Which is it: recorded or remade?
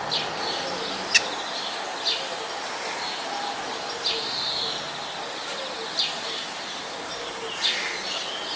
recorded